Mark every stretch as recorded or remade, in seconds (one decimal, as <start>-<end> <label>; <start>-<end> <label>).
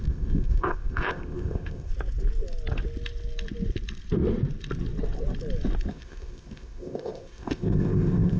0.0-1.9 remade; 1.9-5.9 recorded; 5.9-8.4 remade